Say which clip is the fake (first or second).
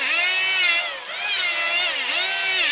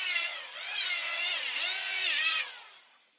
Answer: second